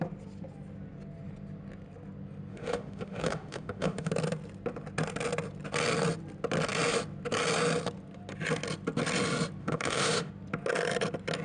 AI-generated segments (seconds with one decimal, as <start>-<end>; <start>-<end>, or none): 2.5-4.1; 9.6-10.3